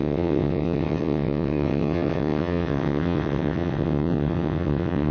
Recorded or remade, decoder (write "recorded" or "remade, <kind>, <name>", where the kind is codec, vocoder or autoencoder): remade, vocoder, WaveNeXt